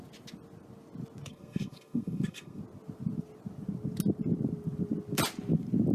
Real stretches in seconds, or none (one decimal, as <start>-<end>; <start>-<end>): 0.0-1.3; 2.6-5.9